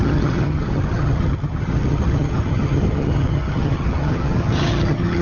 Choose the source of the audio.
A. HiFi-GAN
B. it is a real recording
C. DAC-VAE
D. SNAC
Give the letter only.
A